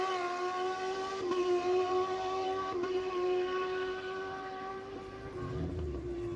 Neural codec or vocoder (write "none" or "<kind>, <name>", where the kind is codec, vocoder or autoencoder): vocoder, BigVGAN v2